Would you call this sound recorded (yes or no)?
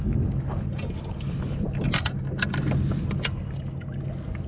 yes